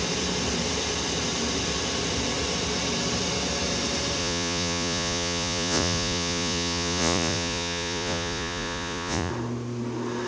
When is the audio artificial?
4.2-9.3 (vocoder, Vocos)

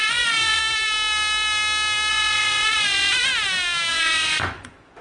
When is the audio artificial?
0.0-0.6 (vocoder, Vocos); 2.1-3.3; 3.9-5.0